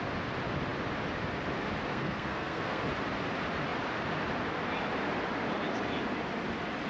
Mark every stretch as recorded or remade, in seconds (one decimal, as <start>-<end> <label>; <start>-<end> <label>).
0.0-1.9 recorded; 1.9-2.8 remade; 2.8-6.9 recorded